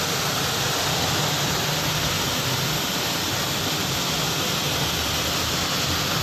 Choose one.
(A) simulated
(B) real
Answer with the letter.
B